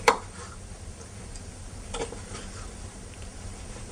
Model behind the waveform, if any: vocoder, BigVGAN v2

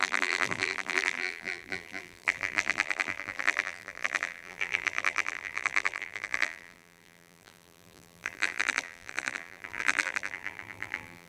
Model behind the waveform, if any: vocoder, BigVGAN v2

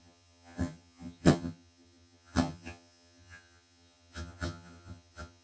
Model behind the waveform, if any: vocoder, HiFi-GAN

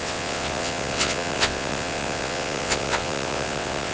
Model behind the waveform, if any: vocoder, WaveNeXt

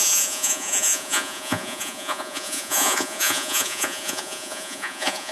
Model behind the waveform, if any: vocoder, Vocos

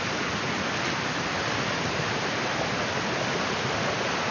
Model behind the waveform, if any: none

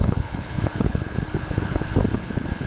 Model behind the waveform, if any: codec, HILCodec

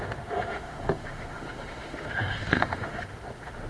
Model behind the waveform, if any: autoencoder, DAC-VAE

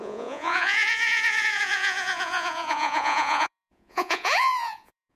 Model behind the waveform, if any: vocoder, Vocos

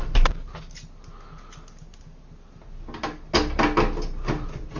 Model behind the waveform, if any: none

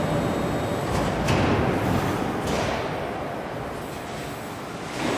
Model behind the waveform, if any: none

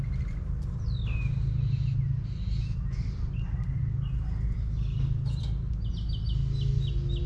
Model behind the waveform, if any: none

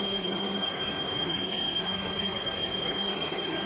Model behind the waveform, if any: codec, SNAC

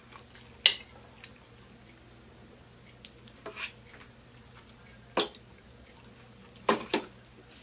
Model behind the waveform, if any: none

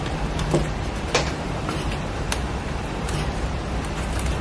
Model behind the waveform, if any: vocoder, BigVGAN v2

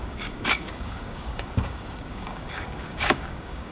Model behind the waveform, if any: codec, DAC